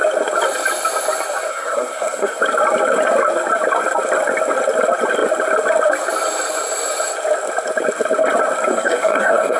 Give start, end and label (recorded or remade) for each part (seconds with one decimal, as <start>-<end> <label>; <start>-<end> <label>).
0.0-1.5 recorded; 1.5-2.4 remade; 2.4-8.7 recorded; 8.7-9.6 remade